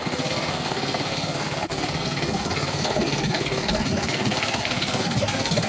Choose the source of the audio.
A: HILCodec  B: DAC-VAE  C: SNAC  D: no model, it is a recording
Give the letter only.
C